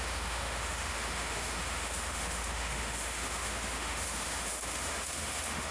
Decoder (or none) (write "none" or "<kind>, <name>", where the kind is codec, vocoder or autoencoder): autoencoder, DAC-VAE